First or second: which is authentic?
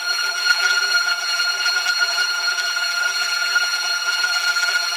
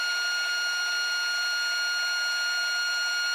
second